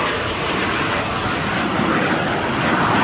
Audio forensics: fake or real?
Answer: real